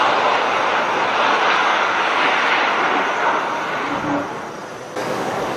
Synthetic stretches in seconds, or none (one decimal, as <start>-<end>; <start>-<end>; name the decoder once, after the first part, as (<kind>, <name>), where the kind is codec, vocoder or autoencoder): 1.6-2.3 (codec, DAC); 5.0-5.6